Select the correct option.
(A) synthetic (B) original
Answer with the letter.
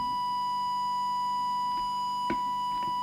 B